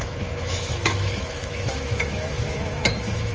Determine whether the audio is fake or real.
fake